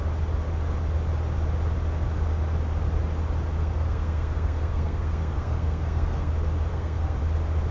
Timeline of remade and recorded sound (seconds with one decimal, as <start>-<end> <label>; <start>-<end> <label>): 0.0-3.6 recorded; 3.6-6.3 remade; 6.3-6.7 recorded; 6.7-7.2 remade; 7.2-7.7 recorded